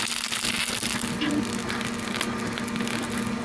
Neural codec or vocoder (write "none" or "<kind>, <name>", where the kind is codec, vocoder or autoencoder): none